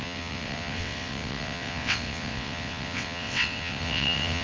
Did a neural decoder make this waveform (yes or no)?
yes